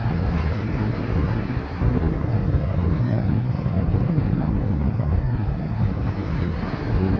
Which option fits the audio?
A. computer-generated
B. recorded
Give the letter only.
A